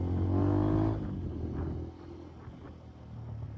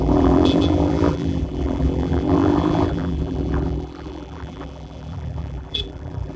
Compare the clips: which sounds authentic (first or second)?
first